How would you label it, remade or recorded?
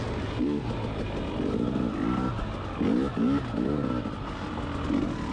recorded